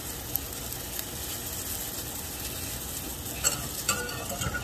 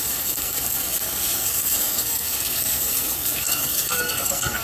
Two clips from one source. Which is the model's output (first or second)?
second